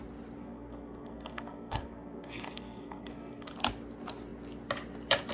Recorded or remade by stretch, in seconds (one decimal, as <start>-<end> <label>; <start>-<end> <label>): 0.0-0.4 recorded; 0.4-3.5 remade; 3.5-5.3 recorded